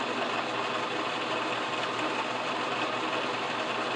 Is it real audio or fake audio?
real